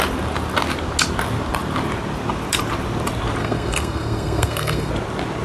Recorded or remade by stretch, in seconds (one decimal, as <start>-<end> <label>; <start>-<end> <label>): 0.0-3.4 recorded; 3.4-4.9 remade; 4.9-5.4 recorded

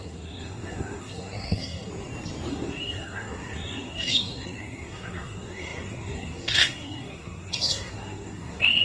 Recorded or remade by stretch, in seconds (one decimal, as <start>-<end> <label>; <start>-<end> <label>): 0.0-1.9 remade; 1.9-2.5 recorded; 2.5-8.8 remade

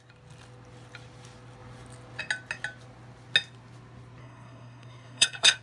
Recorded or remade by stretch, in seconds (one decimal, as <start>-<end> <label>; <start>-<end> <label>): 0.0-4.2 recorded; 4.2-5.6 remade